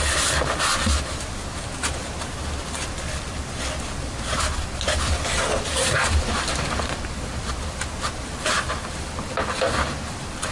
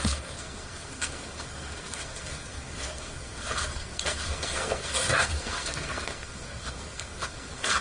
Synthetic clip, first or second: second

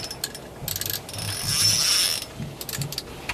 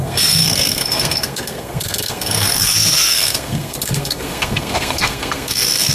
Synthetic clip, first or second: second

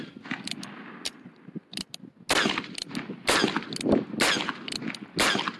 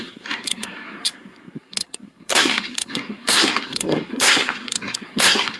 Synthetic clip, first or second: second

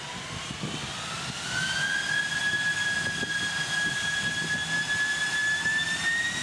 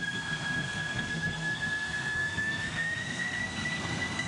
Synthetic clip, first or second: second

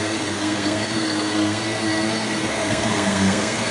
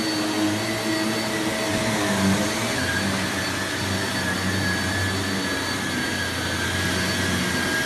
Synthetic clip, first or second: first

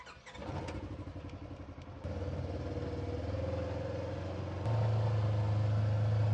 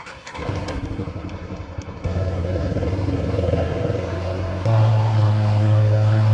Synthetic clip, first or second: second